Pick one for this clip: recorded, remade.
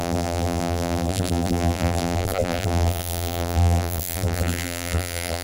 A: remade